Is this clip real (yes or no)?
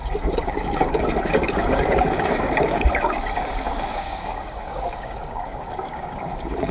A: no